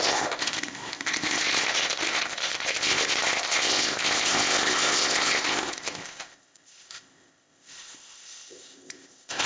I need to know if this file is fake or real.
fake